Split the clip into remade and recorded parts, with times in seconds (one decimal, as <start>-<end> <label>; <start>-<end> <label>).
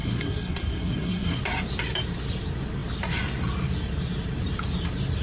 0.0-1.4 remade; 1.4-5.2 recorded